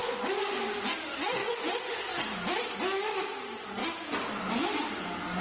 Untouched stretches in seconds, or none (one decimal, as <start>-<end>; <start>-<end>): 0.6-1.4; 2.0-5.4